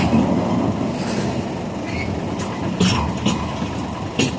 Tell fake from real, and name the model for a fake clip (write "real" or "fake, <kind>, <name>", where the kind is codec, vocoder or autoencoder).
real